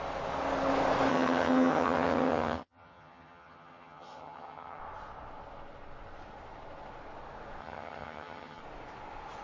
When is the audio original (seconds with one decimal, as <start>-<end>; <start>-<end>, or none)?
0.0-1.1; 4.8-7.6; 8.6-9.4